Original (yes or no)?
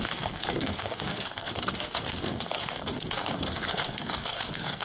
no